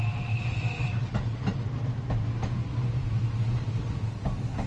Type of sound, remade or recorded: recorded